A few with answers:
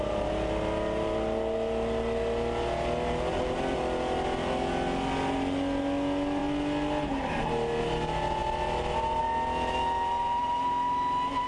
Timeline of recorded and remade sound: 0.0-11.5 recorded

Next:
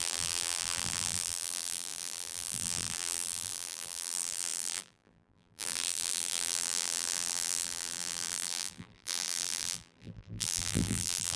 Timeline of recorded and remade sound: 0.0-11.4 remade